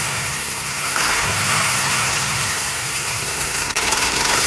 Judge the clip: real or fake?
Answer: fake